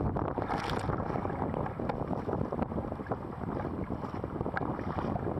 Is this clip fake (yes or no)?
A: no